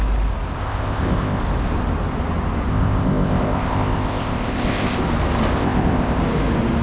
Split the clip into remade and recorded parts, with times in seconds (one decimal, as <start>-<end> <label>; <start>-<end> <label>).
0.0-0.6 recorded; 0.6-1.4 remade; 1.4-2.7 recorded; 2.7-5.0 remade; 5.0-5.5 recorded; 5.5-6.2 remade; 6.2-6.8 recorded